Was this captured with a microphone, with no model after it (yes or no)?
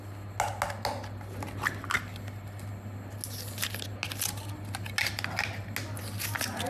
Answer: yes